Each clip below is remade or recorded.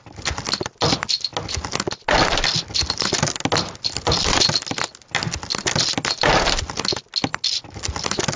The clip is recorded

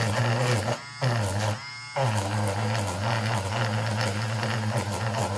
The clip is recorded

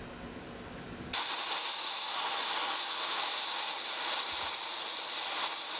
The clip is recorded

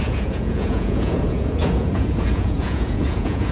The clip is remade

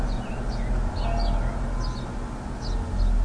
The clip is recorded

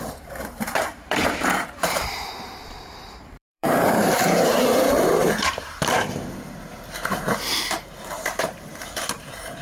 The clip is remade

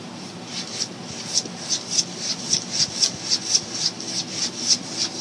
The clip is recorded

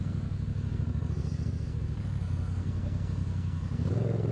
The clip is remade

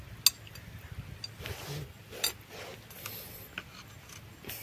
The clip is recorded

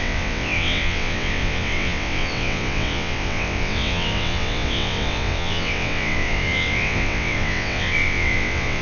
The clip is remade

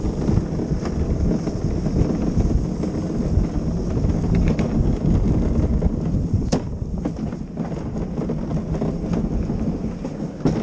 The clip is recorded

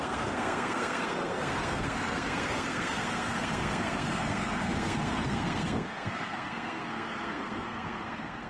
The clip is remade